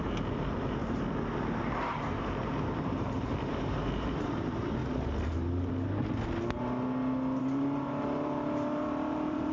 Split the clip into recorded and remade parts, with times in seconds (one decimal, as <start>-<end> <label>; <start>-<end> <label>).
0.0-0.8 remade; 0.8-1.4 recorded; 1.4-4.8 remade; 4.8-7.4 recorded; 7.4-9.5 remade